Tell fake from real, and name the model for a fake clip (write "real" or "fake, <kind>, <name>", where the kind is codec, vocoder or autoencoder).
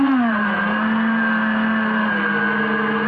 real